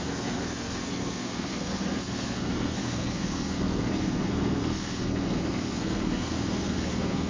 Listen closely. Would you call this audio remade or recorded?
remade